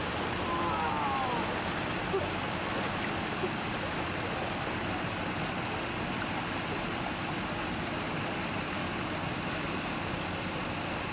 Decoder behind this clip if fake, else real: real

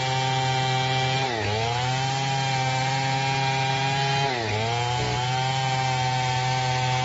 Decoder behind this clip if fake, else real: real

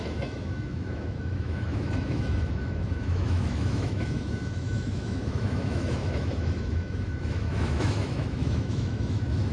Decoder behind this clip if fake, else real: fake, autoencoder, DAC-VAE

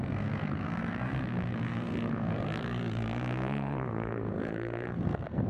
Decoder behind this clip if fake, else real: fake, codec, SNAC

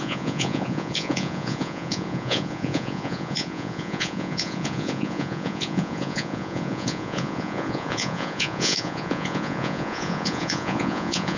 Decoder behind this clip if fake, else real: fake, vocoder, Vocos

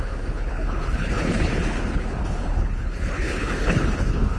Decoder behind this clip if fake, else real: fake, codec, HILCodec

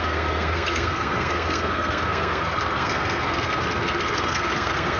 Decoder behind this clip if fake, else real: fake, codec, SNAC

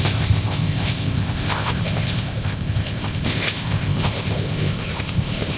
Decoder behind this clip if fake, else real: fake, codec, ZipCodec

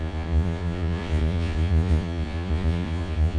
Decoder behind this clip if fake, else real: fake, vocoder, Vocos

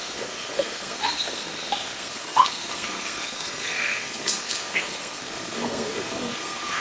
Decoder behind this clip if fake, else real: fake, codec, SNAC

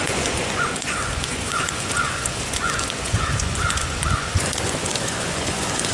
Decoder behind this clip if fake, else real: fake, vocoder, Vocos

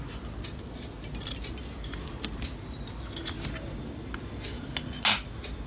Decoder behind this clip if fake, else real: real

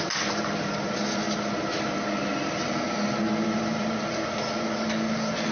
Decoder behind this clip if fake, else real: fake, vocoder, BigVGAN v2